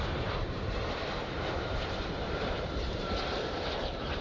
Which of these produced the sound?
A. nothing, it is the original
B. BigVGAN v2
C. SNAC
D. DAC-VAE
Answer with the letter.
B